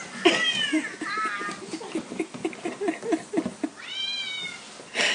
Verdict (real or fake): real